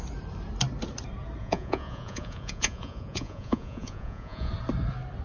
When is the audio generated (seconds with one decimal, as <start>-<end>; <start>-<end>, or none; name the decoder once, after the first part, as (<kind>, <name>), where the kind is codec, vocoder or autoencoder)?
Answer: 1.4-4.5 (vocoder, Vocos)